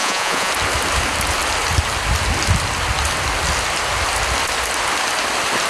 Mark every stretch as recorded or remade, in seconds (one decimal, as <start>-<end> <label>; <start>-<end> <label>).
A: 0.0-0.5 remade; 0.5-5.7 recorded